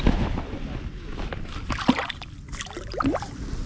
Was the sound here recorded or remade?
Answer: recorded